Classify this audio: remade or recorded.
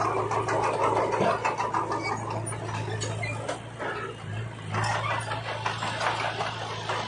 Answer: recorded